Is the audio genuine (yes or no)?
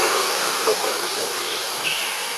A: no